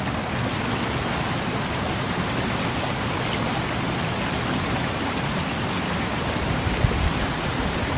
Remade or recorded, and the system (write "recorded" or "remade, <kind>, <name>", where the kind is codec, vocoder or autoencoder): recorded